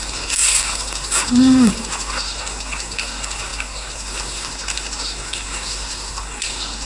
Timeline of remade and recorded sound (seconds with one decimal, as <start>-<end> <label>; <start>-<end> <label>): 0.0-6.9 remade